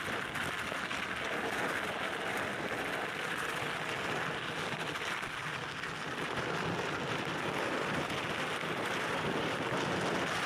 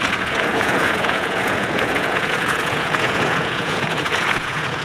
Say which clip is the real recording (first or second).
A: first